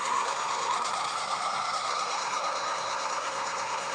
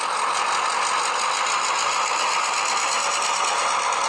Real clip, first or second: second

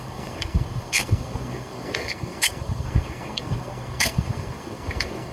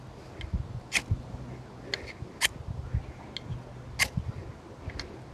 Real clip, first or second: second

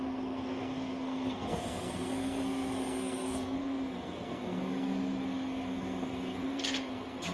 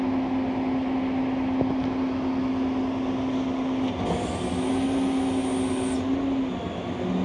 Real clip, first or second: second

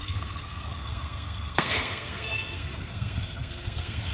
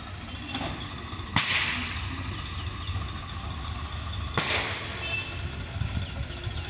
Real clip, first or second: second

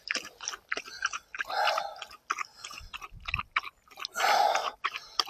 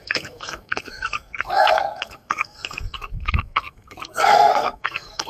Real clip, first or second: first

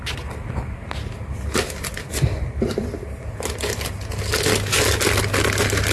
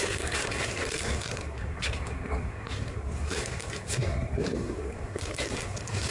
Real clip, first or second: first